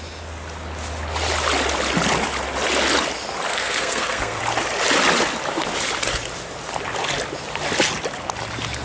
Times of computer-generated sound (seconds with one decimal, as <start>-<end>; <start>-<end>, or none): 3.5-4.4